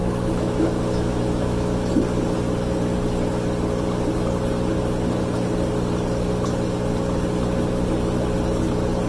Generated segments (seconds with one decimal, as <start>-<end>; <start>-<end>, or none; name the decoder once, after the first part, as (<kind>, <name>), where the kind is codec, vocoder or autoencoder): 0.0-1.9 (autoencoder, DAC-VAE)